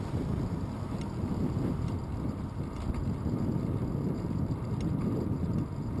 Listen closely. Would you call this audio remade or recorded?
recorded